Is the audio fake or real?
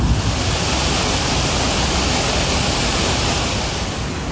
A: real